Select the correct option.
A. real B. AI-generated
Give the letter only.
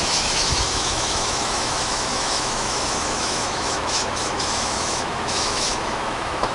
B